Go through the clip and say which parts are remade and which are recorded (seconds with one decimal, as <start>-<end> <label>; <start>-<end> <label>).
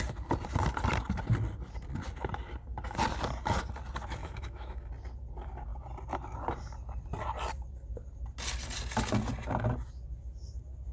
0.0-4.2 recorded; 4.2-4.9 remade; 4.9-10.9 recorded